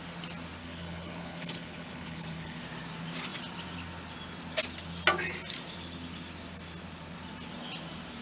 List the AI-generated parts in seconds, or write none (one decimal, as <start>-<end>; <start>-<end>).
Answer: 0.6-2.6